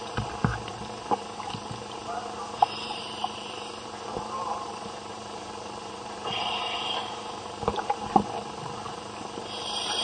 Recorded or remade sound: remade